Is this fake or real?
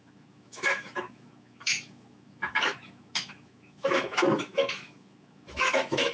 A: fake